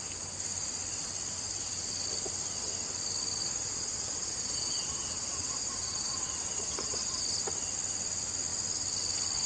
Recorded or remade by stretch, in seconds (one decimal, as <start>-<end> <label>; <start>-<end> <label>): 0.0-3.4 recorded; 3.4-7.2 remade; 7.2-9.5 recorded

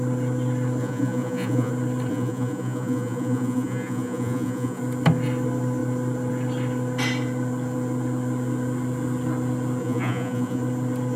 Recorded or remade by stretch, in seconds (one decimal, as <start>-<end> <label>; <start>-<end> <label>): 0.0-0.8 recorded; 0.8-1.7 remade; 1.7-2.1 recorded; 2.1-4.8 remade; 4.8-9.8 recorded; 9.8-10.6 remade; 10.6-11.2 recorded